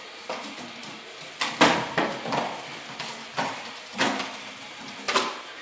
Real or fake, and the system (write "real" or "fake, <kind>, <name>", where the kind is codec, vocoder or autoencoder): real